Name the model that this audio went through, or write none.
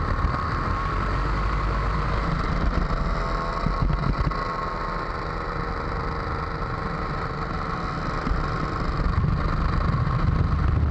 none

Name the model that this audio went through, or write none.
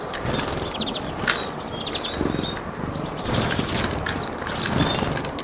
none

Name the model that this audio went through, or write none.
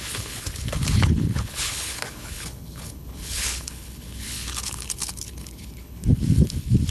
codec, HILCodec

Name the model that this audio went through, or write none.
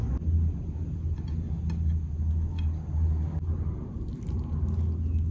none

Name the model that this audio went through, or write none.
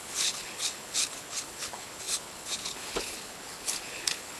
codec, HILCodec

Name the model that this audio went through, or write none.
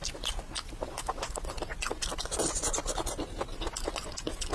none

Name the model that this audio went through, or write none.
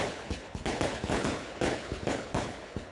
codec, HILCodec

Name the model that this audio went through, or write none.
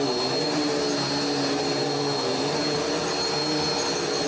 none